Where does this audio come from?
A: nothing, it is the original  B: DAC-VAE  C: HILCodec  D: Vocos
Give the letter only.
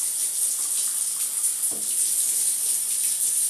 A